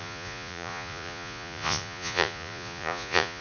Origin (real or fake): fake